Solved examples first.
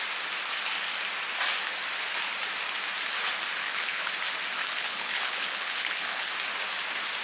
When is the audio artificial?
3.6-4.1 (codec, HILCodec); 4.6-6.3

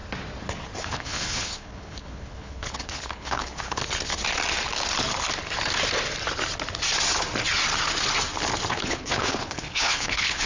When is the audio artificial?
0.8-3.8 (codec, HILCodec); 8.7-10.5